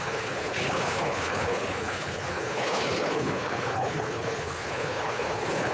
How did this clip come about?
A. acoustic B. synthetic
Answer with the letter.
B